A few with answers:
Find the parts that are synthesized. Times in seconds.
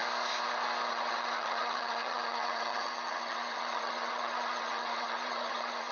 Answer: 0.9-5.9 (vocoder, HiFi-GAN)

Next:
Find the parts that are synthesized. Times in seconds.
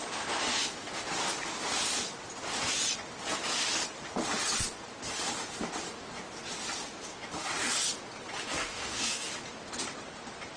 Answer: 8.6-9.3 (codec, DAC)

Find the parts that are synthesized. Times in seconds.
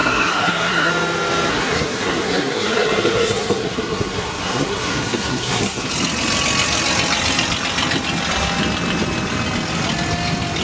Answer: 0.0-0.9 (codec, SNAC); 1.5-5.9